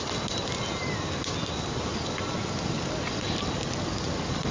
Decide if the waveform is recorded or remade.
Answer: recorded